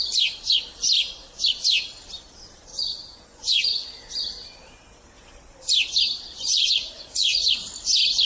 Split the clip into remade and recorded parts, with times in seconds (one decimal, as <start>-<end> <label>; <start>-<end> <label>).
0.0-2.7 recorded; 2.7-4.1 remade; 4.1-6.3 recorded; 6.3-7.4 remade; 7.4-8.2 recorded